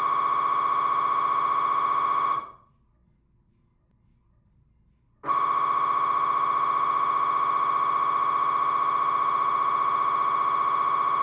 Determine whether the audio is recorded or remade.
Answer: recorded